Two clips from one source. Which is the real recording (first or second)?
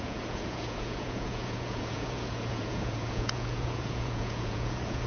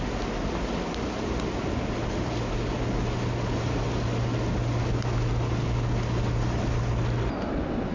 second